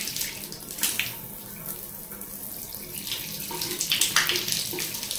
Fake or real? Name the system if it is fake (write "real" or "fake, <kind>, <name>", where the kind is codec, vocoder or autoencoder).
real